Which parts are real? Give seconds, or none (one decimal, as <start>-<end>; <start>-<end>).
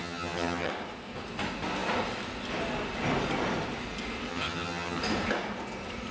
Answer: 0.7-4.3; 5.0-6.1